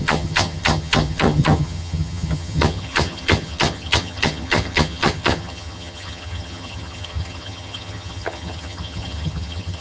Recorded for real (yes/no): no